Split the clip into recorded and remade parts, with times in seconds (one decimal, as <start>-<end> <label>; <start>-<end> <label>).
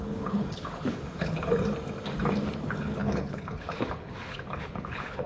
0.0-1.5 remade; 1.5-2.6 recorded; 2.6-5.3 remade